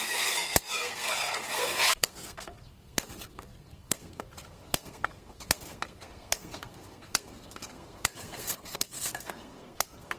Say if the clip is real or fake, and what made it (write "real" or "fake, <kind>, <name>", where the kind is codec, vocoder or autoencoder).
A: fake, codec, SNAC